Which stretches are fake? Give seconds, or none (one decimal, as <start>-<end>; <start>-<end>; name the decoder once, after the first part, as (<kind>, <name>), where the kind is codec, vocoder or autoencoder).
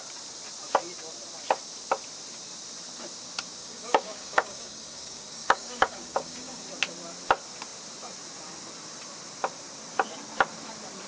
3.6-6.6 (codec, DAC)